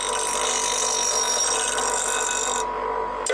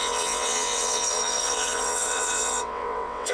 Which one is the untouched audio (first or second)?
first